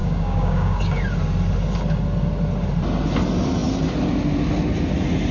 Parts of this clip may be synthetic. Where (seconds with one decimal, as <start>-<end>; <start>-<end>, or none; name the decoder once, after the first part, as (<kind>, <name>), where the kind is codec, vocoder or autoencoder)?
0.0-1.0 (codec, DAC)